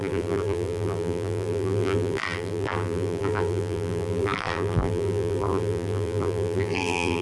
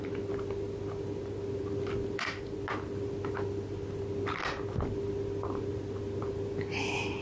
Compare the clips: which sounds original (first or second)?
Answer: second